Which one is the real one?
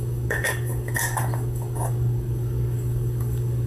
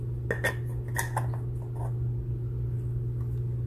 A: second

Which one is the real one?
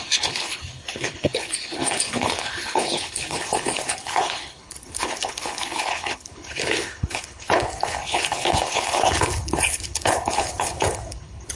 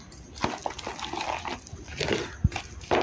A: second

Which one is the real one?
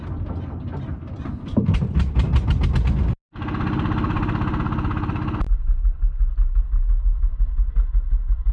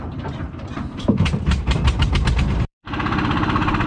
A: first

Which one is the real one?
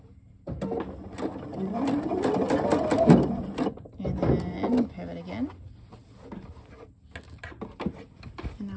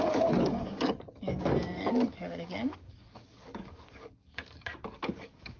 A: first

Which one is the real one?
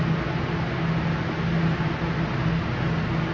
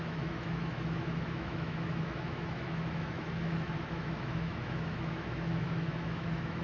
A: first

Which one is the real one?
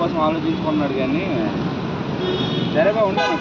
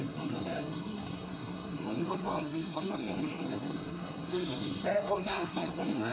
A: first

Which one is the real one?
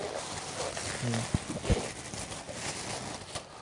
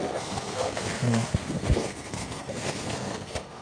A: first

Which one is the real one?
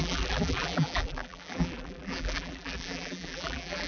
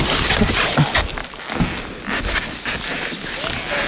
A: second